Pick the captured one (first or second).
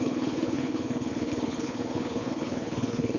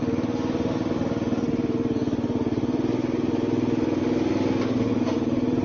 second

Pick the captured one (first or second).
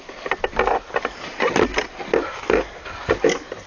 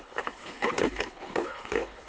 first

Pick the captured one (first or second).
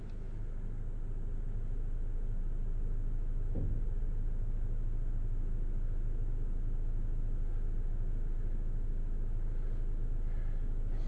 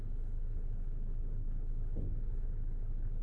first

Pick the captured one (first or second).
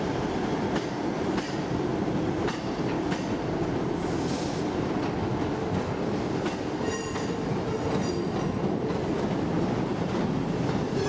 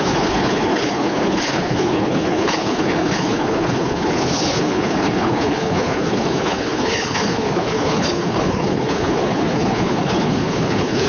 first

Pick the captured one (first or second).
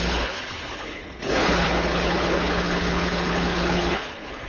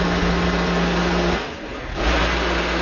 second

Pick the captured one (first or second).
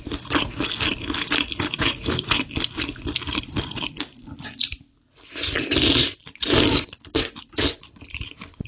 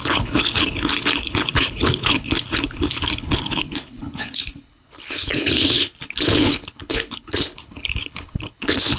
first